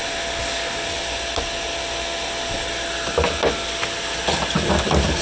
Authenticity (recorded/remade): recorded